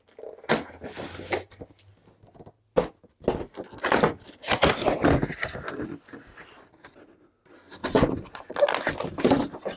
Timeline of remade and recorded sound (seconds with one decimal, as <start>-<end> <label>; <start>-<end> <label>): 0.0-9.8 recorded